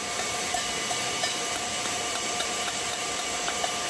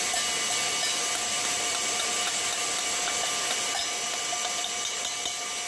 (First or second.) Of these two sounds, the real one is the second